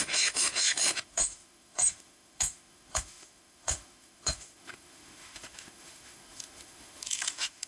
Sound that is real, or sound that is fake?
fake